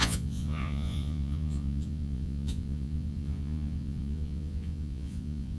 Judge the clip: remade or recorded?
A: remade